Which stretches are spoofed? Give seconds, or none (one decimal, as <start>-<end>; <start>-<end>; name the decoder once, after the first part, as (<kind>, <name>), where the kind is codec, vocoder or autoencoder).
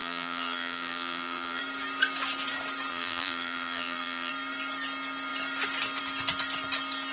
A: 0.0-1.6 (vocoder, BigVGAN v2); 2.9-4.3